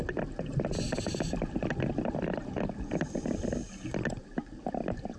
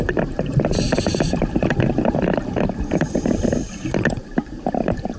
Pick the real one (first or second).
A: first